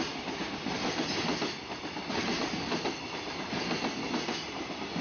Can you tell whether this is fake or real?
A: real